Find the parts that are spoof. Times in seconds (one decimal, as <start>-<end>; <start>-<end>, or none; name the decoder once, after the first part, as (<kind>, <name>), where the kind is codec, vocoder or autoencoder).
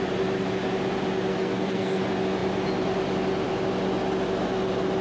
1.3-2.0 (codec, SNAC)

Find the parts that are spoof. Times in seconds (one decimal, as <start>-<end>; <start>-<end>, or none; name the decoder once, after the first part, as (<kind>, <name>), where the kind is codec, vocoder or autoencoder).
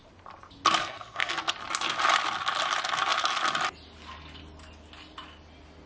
0.8-1.5 (codec, SNAC)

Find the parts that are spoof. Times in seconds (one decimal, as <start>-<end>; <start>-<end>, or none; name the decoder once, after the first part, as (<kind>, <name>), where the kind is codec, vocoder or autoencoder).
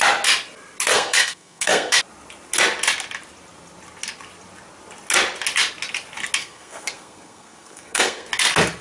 0.9-2.0 (codec, SNAC); 6.4-8.3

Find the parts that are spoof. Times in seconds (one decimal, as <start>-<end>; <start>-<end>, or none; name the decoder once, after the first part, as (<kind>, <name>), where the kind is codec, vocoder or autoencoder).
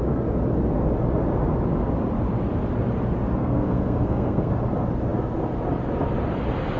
3.4-4.5 (codec, SNAC)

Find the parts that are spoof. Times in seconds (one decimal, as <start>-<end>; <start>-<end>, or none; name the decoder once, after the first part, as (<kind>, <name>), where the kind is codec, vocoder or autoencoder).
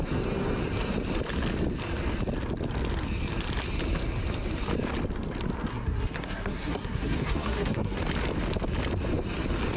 5.7-8.0 (codec, SNAC)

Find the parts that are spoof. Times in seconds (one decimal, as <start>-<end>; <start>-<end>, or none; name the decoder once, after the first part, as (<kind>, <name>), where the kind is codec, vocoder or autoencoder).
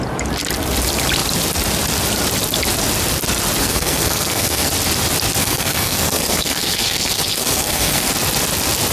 3.6-4.7 (codec, SNAC); 5.4-8.1